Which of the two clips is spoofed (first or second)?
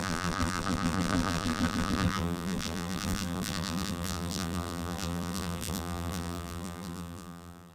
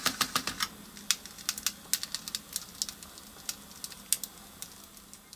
first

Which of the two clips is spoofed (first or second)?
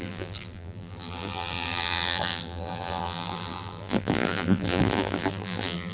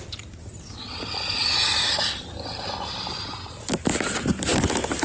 first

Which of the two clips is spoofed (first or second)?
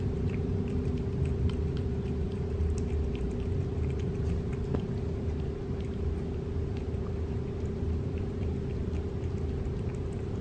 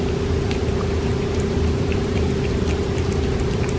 second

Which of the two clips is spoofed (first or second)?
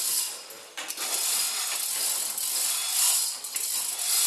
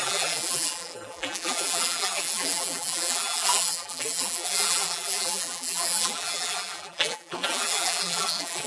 second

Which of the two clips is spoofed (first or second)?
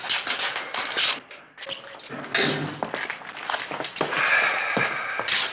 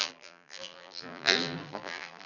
second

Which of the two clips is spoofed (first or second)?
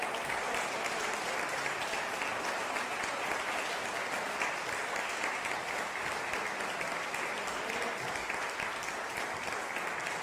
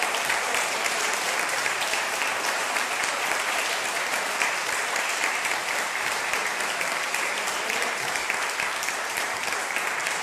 second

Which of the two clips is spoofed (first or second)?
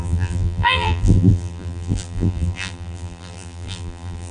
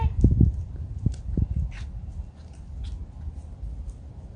first